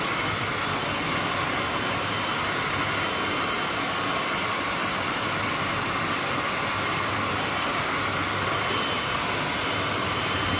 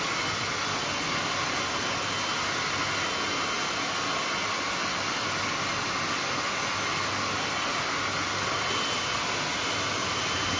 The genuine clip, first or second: second